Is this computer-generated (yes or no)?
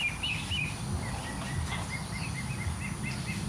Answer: no